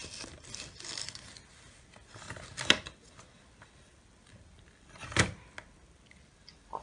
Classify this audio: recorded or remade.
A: recorded